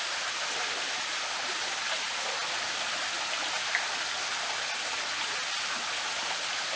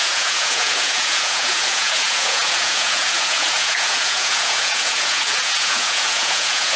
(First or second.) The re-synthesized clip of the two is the second